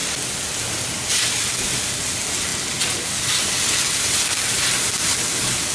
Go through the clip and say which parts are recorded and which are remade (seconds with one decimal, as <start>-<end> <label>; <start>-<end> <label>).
0.0-5.7 recorded